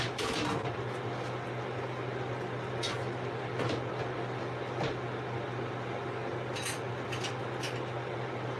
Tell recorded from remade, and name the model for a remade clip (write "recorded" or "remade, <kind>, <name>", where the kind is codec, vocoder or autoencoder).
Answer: recorded